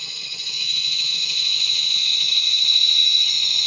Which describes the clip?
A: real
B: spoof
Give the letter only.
B